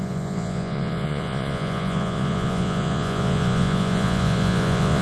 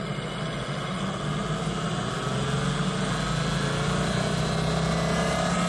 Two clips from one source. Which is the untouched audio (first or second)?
second